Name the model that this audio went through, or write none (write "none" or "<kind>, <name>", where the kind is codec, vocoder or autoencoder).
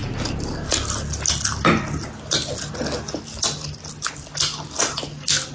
none